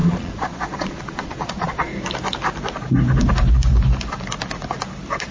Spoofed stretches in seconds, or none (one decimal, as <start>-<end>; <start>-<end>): 0.0-1.9